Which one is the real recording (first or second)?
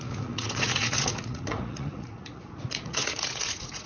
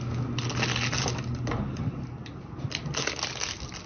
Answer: second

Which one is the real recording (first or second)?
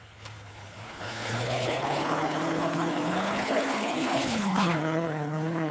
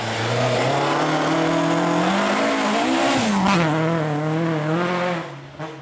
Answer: second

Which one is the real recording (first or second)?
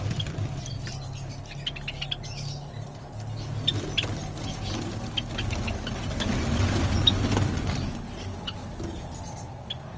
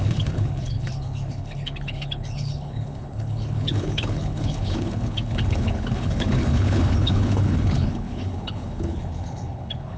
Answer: first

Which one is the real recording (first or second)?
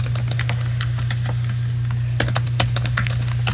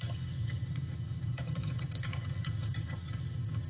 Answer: first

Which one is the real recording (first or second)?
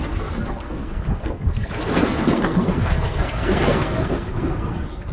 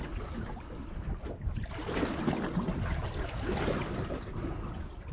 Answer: second